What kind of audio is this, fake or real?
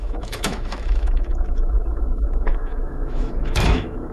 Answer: fake